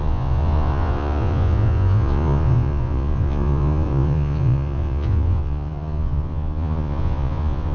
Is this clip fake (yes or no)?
yes